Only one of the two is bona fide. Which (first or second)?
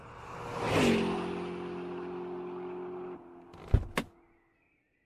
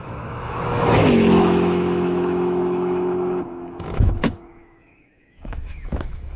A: first